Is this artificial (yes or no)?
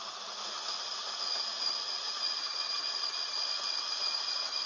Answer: yes